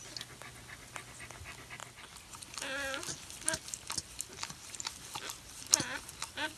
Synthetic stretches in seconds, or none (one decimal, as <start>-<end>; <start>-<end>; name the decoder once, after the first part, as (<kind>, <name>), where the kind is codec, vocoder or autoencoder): none